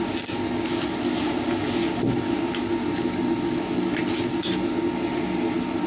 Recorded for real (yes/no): yes